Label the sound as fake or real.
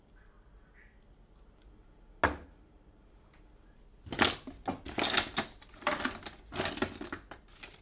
real